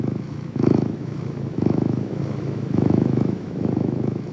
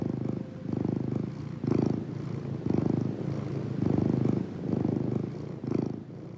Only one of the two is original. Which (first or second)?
second